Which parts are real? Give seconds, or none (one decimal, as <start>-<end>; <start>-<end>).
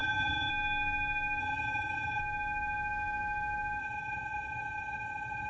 0.5-1.4; 2.2-3.8